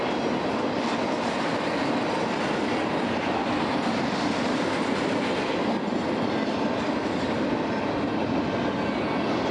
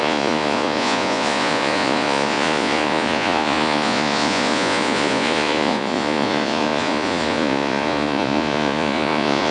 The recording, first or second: first